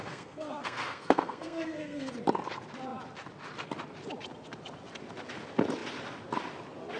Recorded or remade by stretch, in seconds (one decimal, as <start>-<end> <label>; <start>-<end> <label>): 0.0-2.1 remade; 2.1-7.0 recorded